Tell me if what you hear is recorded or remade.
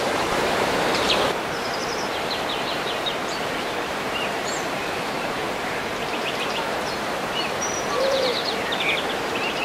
remade